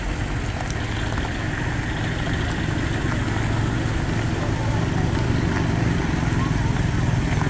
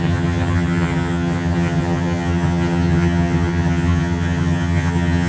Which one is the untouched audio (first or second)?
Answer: first